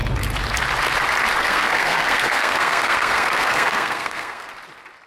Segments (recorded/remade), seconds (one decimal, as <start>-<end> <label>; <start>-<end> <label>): 0.0-1.4 recorded; 1.4-4.5 remade; 4.5-5.1 recorded